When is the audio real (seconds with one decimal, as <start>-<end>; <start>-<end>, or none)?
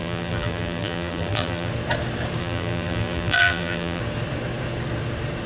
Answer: 1.7-2.4; 4.0-5.5